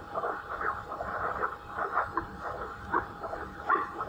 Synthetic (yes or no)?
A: yes